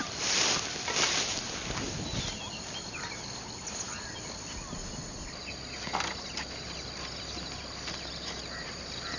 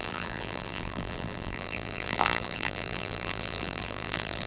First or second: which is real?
first